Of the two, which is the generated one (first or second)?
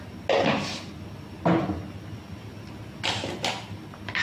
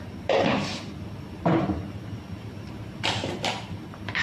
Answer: second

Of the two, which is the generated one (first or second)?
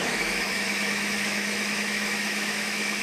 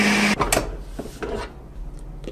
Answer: first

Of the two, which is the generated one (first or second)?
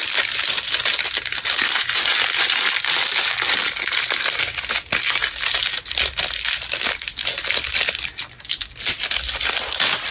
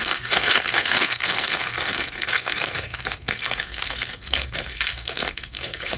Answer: second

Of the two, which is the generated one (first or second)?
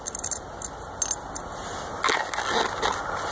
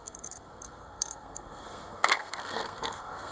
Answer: second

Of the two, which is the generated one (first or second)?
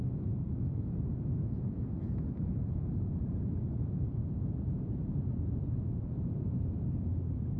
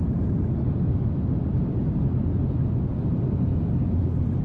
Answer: first